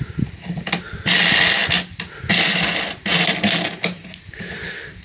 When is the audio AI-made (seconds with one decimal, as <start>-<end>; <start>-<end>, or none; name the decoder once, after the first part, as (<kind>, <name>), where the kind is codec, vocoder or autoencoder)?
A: none